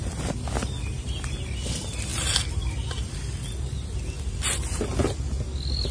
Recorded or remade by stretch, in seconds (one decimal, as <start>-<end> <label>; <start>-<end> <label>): 0.0-5.9 recorded